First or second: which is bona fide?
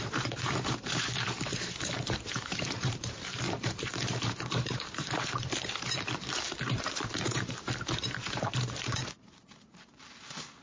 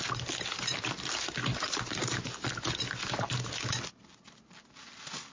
second